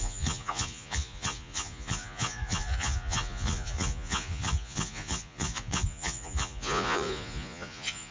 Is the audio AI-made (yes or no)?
yes